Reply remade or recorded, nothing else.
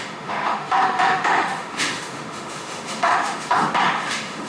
remade